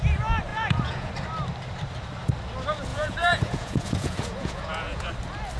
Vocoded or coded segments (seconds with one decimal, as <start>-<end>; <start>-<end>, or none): 0.5-1.1; 2.9-5.1